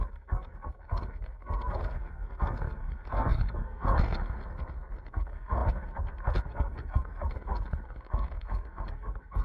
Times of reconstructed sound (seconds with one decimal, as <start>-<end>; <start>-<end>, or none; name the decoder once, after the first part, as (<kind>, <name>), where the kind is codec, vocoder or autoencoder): 0.0-9.4 (codec, SNAC)